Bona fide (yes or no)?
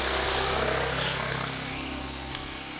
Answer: no